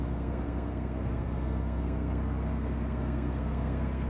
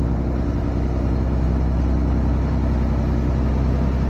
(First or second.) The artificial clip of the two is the first